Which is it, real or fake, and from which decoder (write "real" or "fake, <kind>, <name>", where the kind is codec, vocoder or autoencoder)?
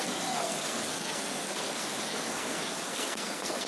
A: fake, codec, SNAC